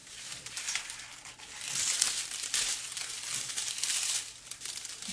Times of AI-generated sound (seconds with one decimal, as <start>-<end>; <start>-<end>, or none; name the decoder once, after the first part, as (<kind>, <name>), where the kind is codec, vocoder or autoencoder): none